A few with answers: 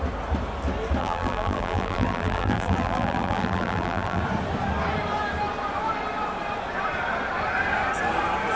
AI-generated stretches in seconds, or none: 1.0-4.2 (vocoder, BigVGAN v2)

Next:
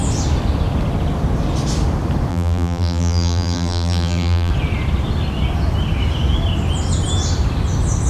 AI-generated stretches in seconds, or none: 2.3-4.5 (vocoder, BigVGAN v2)

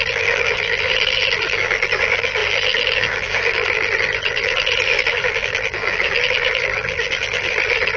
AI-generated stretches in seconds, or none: 0.0-8.0 (vocoder, BigVGAN v2)

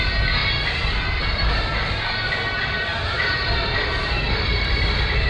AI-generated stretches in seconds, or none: 0.0-0.4 (vocoder, BigVGAN v2); 1.2-1.7; 2.3-5.3